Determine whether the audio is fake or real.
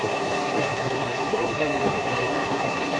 fake